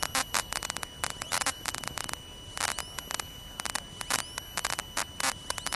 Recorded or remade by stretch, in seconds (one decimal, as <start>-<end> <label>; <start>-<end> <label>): 0.0-1.1 recorded; 1.1-2.1 remade; 2.1-5.8 recorded